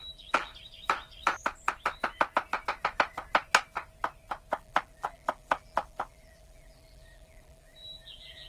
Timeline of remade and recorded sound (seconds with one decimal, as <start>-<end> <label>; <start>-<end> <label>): 0.0-0.5 remade; 0.5-4.5 recorded; 4.5-8.5 remade

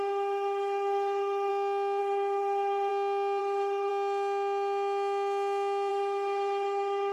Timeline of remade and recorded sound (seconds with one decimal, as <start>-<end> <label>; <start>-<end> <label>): 0.0-1.5 remade; 1.5-2.0 recorded; 2.0-2.9 remade; 2.9-3.4 recorded; 3.4-3.9 remade; 3.9-5.9 recorded; 5.9-7.1 remade